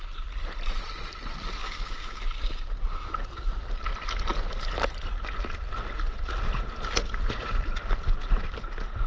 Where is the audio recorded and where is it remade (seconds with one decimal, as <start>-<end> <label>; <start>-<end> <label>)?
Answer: 0.0-1.6 recorded; 1.6-2.2 remade; 2.2-9.1 recorded